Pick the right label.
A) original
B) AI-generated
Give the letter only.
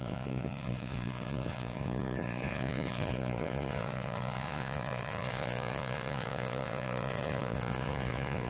B